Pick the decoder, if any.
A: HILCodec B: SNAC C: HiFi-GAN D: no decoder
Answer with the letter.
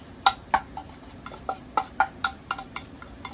D